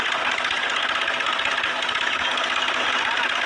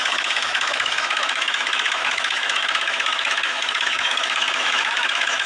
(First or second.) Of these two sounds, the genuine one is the first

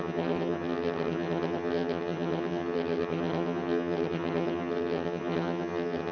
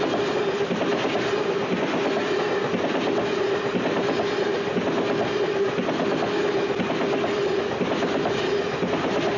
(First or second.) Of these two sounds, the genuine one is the second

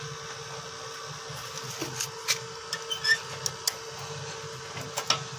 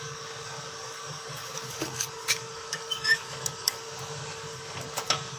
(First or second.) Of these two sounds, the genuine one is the first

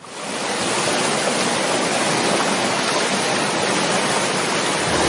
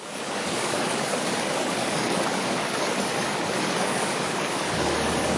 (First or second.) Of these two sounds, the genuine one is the first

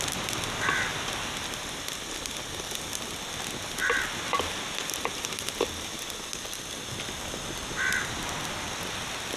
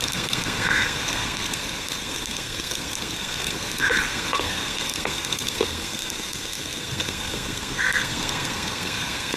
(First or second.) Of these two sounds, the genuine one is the first